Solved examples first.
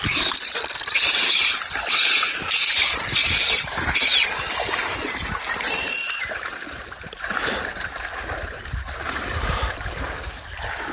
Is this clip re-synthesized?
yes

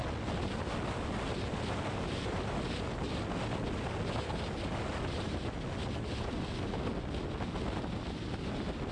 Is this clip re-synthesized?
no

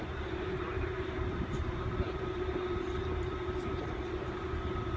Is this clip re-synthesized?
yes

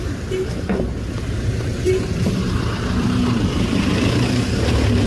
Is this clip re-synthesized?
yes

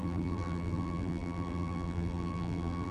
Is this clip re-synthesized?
yes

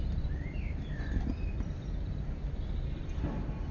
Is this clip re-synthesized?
yes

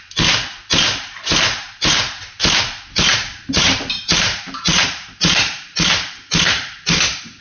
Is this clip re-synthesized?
yes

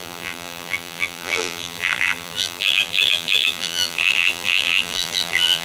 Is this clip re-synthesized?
yes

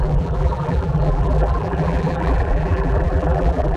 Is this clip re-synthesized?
yes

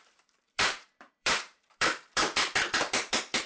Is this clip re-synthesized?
yes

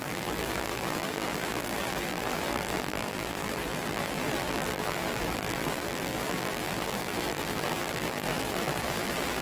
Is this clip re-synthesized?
yes